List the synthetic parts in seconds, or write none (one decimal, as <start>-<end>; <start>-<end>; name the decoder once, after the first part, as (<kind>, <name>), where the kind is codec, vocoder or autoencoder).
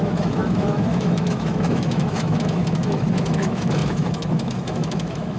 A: 0.0-5.4 (autoencoder, DAC-VAE)